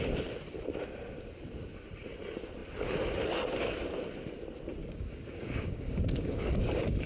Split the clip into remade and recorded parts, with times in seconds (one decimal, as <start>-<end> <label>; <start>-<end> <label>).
0.0-4.8 recorded; 4.8-7.1 remade